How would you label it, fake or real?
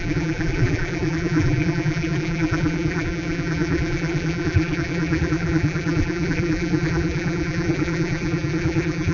fake